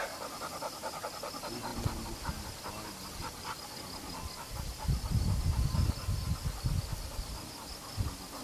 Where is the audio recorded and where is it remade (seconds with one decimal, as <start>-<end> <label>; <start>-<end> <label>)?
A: 0.0-8.4 recorded